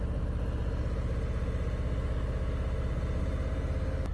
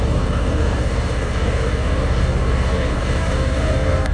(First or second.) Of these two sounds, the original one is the first